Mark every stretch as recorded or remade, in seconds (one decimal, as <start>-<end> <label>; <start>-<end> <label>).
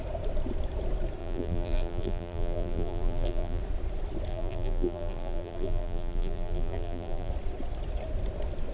0.0-1.2 recorded; 1.2-3.6 remade; 3.6-4.3 recorded; 4.3-7.3 remade; 7.3-8.7 recorded